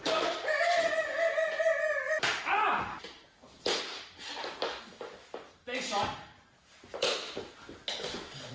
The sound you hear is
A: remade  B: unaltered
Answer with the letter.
B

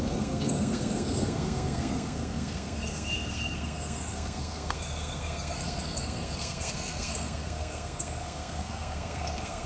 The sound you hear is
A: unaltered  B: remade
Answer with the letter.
B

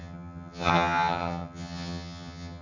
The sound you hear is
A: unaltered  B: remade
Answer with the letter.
B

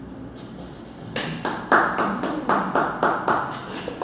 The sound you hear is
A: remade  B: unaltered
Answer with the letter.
B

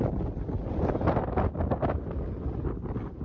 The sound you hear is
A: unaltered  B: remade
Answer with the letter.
A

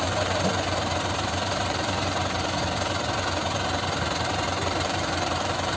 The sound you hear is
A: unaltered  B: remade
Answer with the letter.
B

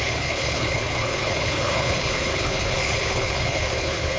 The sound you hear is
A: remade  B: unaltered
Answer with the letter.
A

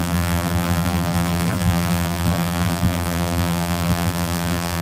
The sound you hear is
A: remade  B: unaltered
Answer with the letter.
A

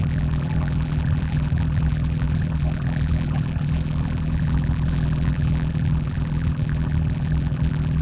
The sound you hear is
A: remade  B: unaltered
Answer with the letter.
A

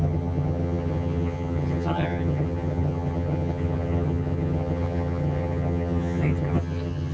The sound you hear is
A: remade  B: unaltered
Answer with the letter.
A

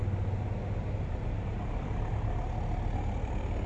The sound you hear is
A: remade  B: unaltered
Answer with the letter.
B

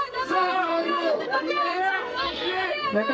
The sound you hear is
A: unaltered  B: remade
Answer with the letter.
B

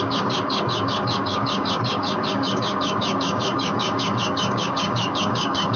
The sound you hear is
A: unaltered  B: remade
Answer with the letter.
B